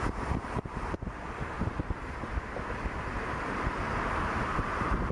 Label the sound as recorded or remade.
remade